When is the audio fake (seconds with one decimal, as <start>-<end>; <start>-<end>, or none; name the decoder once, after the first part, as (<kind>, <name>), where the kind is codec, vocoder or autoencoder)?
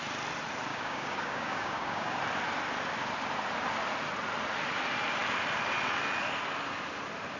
0.7-2.2 (codec, DAC)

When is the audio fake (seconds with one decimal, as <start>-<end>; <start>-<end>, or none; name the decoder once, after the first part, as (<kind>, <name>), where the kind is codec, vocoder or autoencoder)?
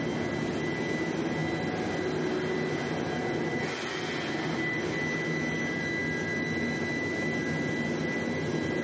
none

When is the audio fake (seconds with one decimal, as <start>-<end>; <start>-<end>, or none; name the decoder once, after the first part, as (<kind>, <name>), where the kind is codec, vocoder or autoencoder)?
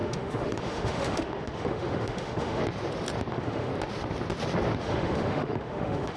0.0-2.6 (autoencoder, DAC-VAE); 3.3-3.7; 4.8-6.2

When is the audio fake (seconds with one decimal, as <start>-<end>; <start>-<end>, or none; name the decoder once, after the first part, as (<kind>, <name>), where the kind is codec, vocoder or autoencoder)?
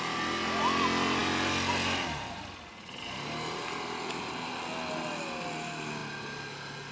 none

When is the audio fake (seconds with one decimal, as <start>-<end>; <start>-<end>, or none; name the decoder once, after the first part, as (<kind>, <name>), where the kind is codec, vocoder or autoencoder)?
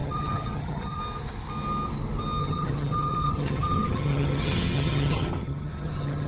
0.0-1.0 (vocoder, HiFi-GAN); 2.4-6.3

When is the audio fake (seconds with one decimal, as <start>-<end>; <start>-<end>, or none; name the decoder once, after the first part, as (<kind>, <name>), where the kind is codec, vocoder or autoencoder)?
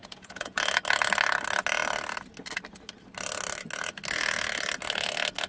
0.0-0.6 (vocoder, Vocos)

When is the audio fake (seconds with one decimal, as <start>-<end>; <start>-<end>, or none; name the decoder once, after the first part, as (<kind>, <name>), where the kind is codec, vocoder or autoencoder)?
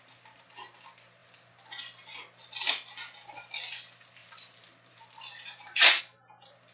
4.2-6.0 (vocoder, BigVGAN v2)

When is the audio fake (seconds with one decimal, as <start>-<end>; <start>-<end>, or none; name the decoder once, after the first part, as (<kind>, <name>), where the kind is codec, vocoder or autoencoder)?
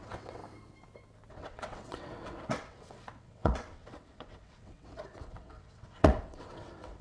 0.0-0.4 (vocoder, WaveNeXt); 1.3-7.0